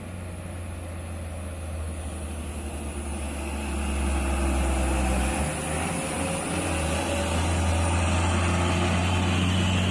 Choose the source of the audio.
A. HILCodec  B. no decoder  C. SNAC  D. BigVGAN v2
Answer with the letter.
B